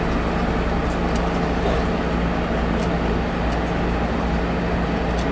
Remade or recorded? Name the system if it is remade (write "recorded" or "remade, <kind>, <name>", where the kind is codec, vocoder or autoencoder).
recorded